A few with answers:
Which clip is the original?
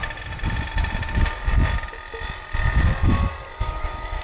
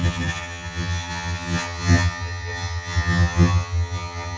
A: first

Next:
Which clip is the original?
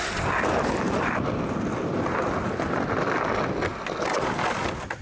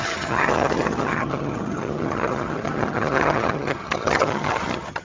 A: first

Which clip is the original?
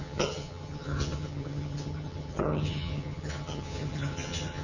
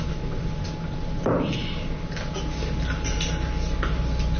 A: second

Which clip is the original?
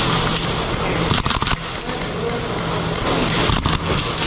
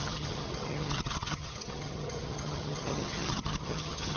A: first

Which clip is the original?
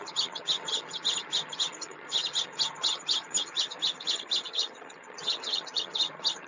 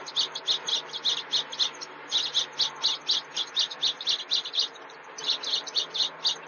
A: second